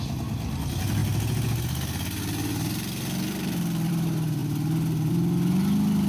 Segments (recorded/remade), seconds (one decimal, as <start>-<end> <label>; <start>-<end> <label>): 0.0-6.1 recorded